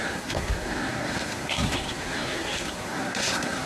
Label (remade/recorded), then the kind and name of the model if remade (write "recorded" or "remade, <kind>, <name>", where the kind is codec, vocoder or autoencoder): remade, codec, SNAC